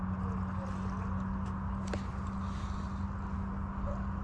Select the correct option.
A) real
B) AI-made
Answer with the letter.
A